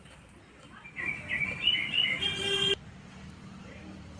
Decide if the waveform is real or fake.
fake